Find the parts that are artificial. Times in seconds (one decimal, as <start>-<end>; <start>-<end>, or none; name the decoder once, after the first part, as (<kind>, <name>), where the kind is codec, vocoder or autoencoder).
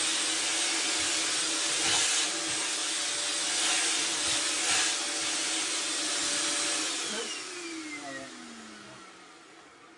none